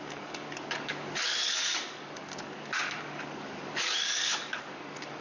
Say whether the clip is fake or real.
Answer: fake